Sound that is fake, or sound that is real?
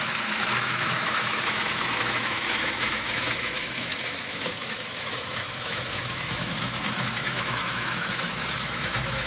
fake